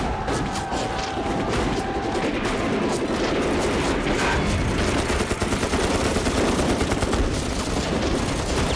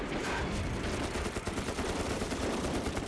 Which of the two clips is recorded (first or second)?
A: first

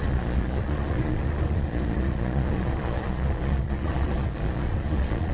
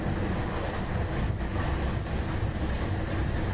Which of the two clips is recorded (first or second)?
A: second